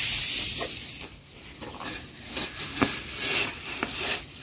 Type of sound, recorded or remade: recorded